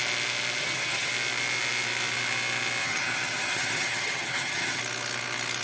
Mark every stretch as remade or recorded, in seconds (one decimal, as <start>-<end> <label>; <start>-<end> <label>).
0.0-0.6 recorded; 0.6-1.1 remade; 1.1-2.8 recorded; 2.8-4.8 remade; 4.8-5.6 recorded